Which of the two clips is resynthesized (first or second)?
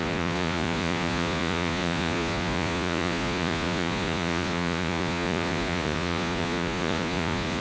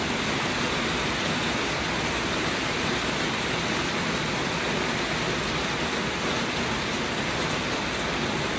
first